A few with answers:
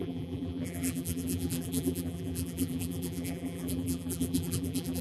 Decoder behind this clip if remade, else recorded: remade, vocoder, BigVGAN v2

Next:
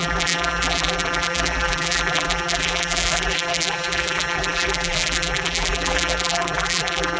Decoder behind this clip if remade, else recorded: remade, vocoder, BigVGAN v2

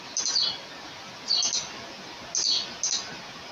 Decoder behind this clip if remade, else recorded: recorded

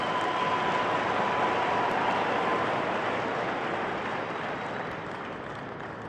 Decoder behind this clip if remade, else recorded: recorded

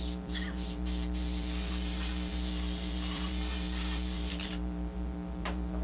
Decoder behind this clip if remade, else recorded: remade, vocoder, BigVGAN v2